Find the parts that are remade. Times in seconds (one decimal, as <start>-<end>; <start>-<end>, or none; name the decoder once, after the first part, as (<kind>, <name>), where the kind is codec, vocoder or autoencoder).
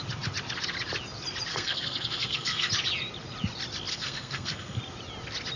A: 1.5-2.7 (codec, SNAC); 3.9-4.8